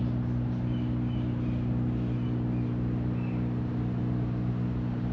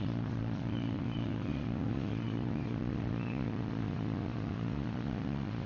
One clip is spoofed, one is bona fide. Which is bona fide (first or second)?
first